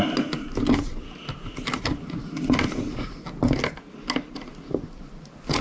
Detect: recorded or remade recorded